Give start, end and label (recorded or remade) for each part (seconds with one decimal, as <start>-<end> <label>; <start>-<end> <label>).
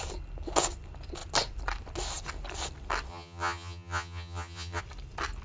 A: 0.0-3.1 recorded; 3.1-4.8 remade; 4.8-5.4 recorded